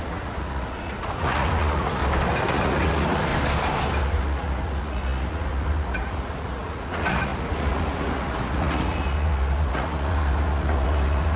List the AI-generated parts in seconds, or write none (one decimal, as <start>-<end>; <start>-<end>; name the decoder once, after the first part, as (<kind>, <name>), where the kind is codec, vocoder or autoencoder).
0.0-2.0 (vocoder, Vocos); 2.5-3.3; 4.0-11.4